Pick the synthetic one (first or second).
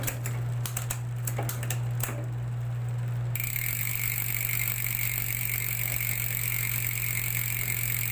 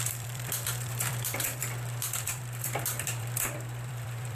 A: second